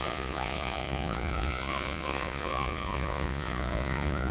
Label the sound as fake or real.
fake